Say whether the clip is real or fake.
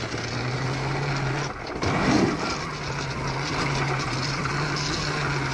real